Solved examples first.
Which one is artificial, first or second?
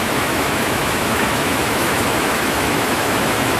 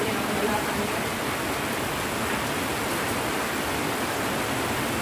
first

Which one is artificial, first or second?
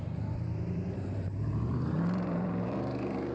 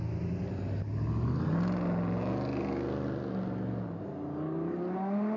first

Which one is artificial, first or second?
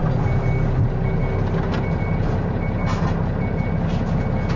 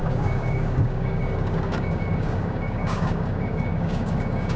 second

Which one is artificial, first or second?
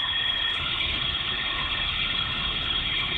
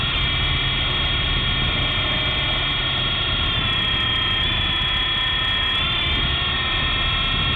first